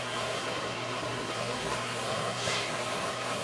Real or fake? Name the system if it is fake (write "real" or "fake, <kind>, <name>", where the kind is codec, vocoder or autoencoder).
fake, codec, SNAC